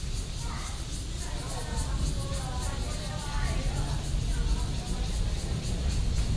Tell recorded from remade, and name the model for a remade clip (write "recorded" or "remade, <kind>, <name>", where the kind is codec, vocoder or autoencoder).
recorded